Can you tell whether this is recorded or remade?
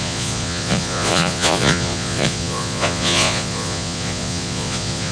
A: remade